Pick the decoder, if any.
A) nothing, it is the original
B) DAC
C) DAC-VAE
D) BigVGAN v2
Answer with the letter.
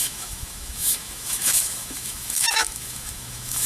C